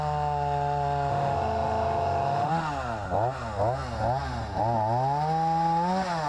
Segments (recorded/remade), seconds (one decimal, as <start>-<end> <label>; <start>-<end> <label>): 0.0-1.1 recorded; 1.1-2.5 remade; 2.5-6.3 recorded